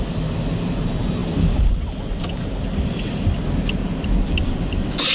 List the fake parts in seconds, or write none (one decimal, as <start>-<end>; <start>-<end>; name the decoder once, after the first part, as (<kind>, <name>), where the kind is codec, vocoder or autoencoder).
none